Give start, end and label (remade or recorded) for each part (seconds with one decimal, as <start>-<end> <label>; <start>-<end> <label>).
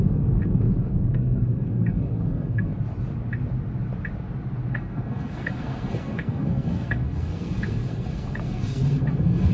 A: 0.0-2.7 remade; 2.7-4.7 recorded; 4.7-9.5 remade